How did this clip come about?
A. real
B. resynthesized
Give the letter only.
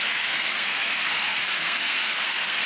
B